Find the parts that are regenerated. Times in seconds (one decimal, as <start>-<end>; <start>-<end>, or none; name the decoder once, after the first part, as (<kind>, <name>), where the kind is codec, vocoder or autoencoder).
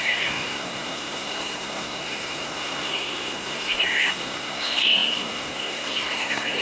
0.0-6.6 (codec, SNAC)